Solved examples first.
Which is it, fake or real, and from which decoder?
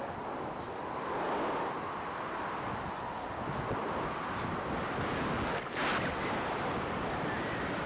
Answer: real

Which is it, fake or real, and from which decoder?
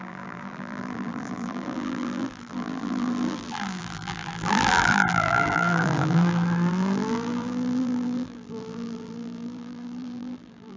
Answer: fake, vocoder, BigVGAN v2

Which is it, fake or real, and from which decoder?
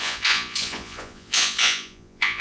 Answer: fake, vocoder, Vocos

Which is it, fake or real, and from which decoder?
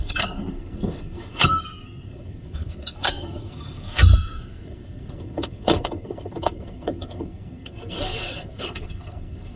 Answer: fake, codec, SNAC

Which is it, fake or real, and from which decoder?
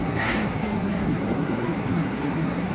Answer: fake, codec, SNAC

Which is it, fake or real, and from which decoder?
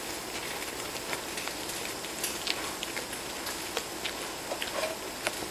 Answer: real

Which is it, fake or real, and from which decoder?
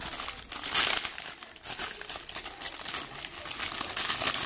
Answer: real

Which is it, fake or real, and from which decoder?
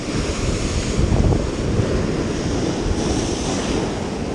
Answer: real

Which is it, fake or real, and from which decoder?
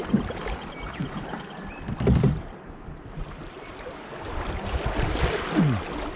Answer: real